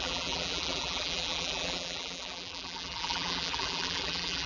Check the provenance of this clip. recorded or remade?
remade